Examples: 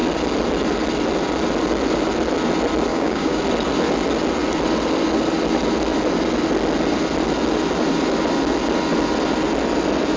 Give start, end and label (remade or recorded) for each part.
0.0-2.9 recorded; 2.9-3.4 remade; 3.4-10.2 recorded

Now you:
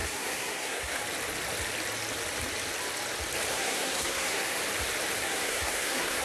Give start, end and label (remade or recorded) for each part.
0.0-1.0 remade; 1.0-3.5 recorded; 3.5-4.6 remade; 4.6-5.2 recorded; 5.2-6.2 remade

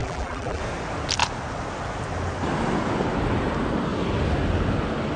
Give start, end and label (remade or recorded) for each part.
0.0-0.6 remade; 0.6-5.2 recorded

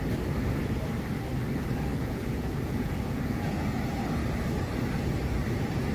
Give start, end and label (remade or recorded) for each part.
0.0-1.9 recorded; 1.9-3.8 remade; 3.8-5.9 recorded